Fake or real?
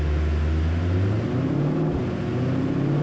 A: real